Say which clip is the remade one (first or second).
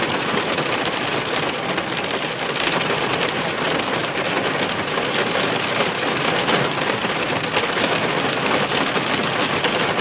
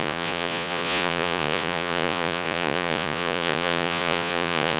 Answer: second